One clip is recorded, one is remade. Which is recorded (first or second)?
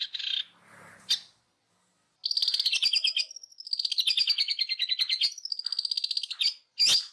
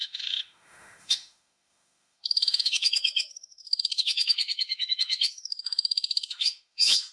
first